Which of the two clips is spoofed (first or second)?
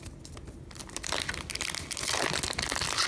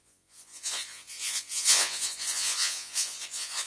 second